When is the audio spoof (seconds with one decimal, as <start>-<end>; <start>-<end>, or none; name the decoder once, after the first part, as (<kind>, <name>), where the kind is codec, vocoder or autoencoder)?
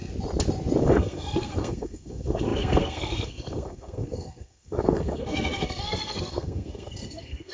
0.8-7.5 (codec, SNAC)